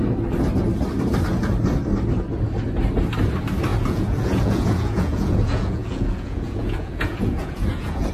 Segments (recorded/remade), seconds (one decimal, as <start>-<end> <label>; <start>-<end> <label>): 0.0-3.7 recorded; 3.7-8.1 remade